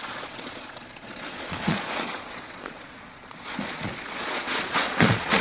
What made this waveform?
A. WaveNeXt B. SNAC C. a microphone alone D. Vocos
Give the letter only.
D